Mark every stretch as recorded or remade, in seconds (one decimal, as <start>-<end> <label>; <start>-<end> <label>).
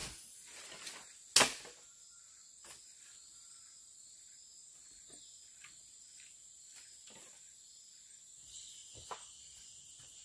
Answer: 0.0-10.2 recorded